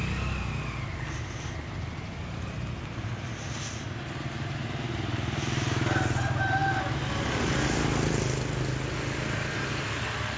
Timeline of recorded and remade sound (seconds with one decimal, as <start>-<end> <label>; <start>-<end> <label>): 0.0-10.4 recorded